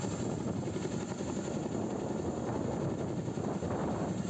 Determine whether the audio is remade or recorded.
recorded